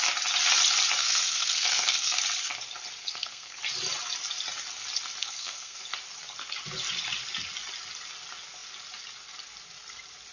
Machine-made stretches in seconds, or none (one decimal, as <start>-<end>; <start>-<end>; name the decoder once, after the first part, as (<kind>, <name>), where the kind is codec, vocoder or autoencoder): 1.0-2.2 (codec, SNAC); 3.0-3.6; 5.2-5.8

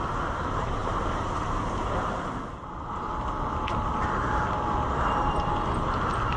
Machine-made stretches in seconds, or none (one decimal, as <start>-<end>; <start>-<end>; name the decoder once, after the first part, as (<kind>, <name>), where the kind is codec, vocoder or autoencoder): none

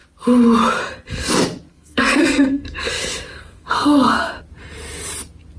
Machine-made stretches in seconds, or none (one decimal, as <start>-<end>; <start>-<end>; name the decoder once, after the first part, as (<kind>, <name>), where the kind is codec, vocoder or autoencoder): 1.7-2.9 (codec, SNAC); 3.3-4.4